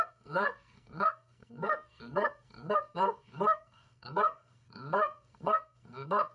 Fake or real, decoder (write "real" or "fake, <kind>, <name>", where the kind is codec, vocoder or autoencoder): fake, codec, SNAC